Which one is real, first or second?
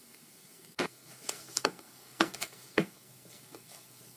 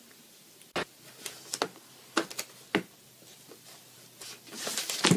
second